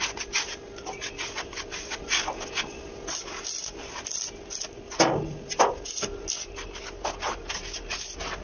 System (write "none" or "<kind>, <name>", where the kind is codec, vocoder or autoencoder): none